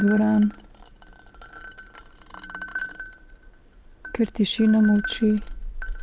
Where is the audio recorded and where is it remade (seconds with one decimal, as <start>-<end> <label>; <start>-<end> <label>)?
0.0-6.0 recorded

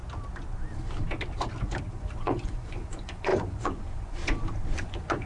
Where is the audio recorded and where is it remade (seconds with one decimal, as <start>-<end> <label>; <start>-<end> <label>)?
0.0-1.9 recorded; 1.9-4.2 remade; 4.2-4.8 recorded; 4.8-5.3 remade

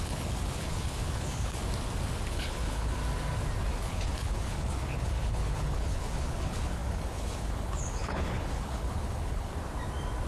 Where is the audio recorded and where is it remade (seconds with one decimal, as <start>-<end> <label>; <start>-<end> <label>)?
0.0-1.6 remade; 1.6-2.3 recorded; 2.3-3.0 remade; 3.0-3.7 recorded; 3.7-9.5 remade; 9.5-10.3 recorded

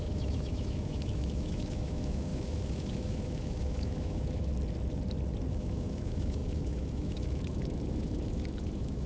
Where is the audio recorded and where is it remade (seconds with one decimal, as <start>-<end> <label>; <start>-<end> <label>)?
0.0-4.5 remade; 4.5-5.5 recorded; 5.5-9.1 remade

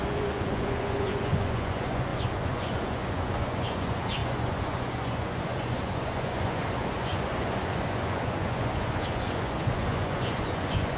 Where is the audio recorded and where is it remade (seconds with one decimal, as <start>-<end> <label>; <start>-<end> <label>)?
0.0-11.0 remade

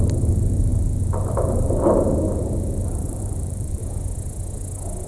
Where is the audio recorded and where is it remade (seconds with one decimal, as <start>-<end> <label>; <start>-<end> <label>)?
0.0-3.8 remade; 3.8-5.1 recorded

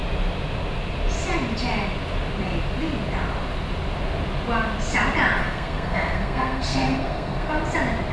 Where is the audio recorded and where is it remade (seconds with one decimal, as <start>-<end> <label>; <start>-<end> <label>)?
0.0-5.4 recorded; 5.4-7.5 remade; 7.5-8.1 recorded

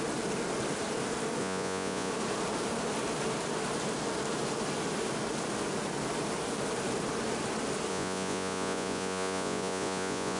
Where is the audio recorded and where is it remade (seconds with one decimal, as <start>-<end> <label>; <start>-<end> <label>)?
0.0-1.4 recorded; 1.4-2.1 remade; 2.1-7.9 recorded; 7.9-10.4 remade